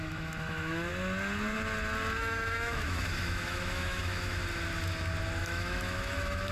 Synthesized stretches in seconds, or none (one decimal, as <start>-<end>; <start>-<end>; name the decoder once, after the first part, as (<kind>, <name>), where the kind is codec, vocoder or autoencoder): 0.0-0.9 (autoencoder, DAC-VAE); 2.2-4.4; 5.4-6.5